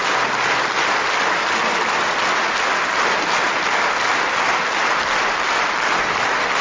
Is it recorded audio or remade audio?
recorded